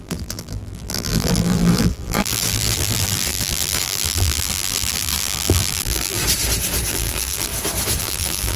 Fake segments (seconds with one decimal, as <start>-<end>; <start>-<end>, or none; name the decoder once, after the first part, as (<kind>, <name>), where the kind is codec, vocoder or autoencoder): 0.0-6.2 (vocoder, BigVGAN v2); 6.9-7.5; 8.0-8.6